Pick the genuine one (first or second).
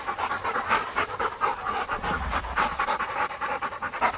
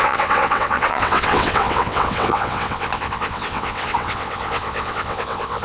first